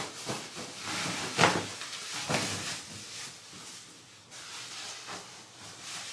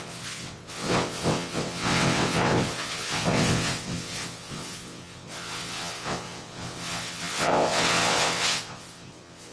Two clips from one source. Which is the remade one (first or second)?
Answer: second